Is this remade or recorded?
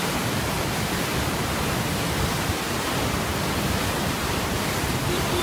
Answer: recorded